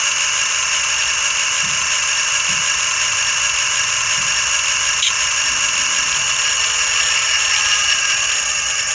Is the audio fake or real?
real